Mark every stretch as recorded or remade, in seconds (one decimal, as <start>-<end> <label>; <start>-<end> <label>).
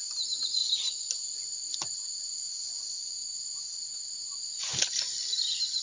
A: 0.0-5.8 recorded